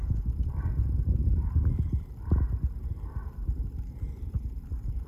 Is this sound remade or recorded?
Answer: recorded